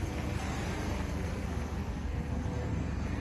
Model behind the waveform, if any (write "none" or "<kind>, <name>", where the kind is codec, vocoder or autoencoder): codec, SNAC